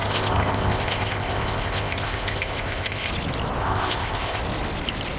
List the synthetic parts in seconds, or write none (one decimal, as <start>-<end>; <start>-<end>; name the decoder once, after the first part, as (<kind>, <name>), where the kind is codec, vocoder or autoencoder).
0.0-3.1 (codec, ZipCodec); 3.6-4.4